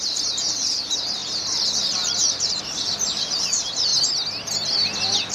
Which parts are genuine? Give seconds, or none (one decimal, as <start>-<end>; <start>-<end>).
3.9-5.3